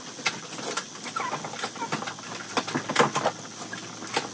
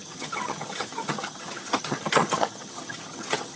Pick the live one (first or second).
first